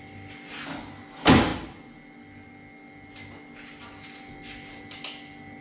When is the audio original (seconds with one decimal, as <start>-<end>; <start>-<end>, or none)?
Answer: 0.0-5.6